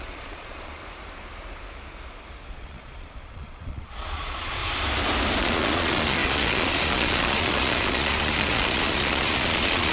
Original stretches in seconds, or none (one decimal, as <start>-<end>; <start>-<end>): 0.8-2.5; 4.6-5.4